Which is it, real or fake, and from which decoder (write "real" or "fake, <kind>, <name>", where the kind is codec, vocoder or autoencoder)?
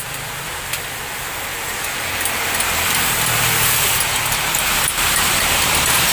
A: fake, vocoder, BigVGAN v2